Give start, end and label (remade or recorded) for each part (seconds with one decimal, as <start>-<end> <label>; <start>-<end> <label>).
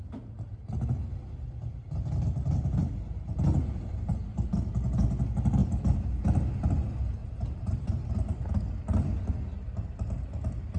0.0-2.5 recorded; 2.5-4.6 remade; 4.6-5.6 recorded; 5.6-6.2 remade; 6.2-7.2 recorded; 7.2-8.1 remade; 8.1-10.8 recorded